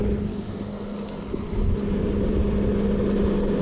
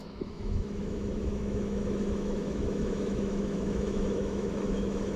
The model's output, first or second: second